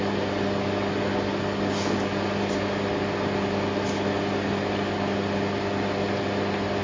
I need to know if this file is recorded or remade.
recorded